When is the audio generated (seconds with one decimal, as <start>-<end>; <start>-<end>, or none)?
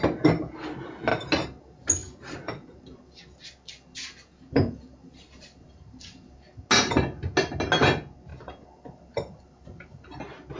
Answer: 2.0-2.8; 8.3-10.2